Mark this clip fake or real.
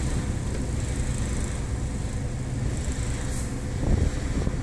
real